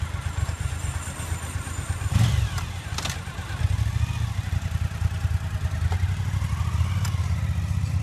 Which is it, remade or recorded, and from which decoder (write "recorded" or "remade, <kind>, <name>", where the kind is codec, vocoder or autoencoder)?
recorded